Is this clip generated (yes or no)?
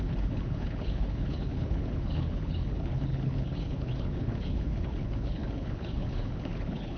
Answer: yes